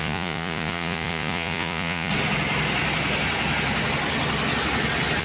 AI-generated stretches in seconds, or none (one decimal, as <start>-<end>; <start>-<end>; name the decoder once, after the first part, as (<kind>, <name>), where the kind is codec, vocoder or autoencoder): 0.0-2.1 (vocoder, Vocos)